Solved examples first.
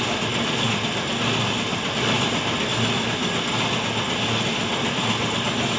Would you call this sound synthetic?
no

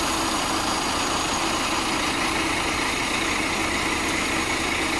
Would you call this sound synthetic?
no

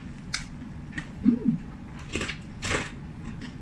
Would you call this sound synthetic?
yes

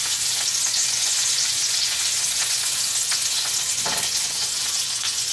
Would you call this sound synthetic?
yes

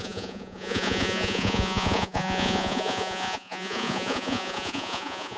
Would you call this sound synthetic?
yes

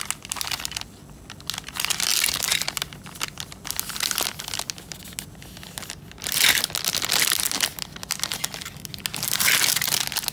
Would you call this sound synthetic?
no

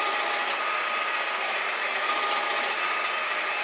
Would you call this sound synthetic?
no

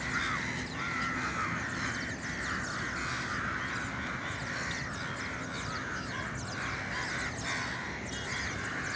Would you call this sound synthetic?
no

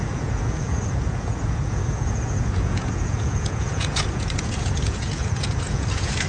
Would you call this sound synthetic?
yes